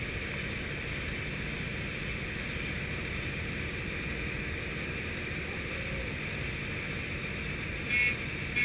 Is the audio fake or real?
real